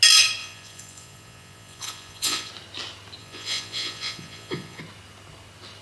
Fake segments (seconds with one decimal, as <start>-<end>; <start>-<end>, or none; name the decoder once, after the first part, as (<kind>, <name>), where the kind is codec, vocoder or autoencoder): 0.4-2.5 (vocoder, Vocos); 3.2-4.8

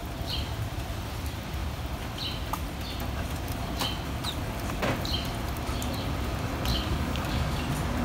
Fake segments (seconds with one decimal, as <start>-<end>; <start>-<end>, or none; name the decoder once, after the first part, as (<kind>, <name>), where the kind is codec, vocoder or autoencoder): 6.7-7.6 (codec, DAC)

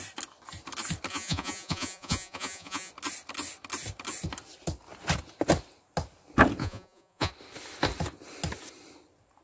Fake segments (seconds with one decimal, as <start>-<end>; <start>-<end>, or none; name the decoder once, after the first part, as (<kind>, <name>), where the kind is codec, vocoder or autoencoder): 1.1-2.9 (vocoder, Vocos); 6.6-7.3

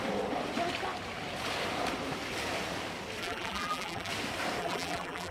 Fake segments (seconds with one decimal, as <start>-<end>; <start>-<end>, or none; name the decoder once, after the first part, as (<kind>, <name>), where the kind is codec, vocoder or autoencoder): 3.2-4.1 (vocoder, BigVGAN v2); 4.6-5.3